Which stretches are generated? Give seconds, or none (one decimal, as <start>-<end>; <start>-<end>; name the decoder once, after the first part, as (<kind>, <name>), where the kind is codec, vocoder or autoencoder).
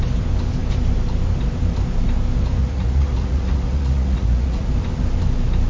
2.6-4.7 (vocoder, Vocos)